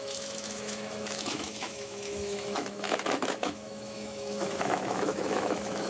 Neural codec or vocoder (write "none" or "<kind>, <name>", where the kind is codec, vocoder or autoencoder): autoencoder, DAC-VAE